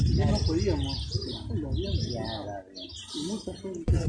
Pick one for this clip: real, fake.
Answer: real